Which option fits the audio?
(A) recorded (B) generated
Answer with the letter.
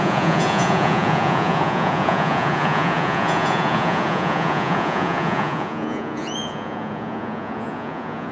B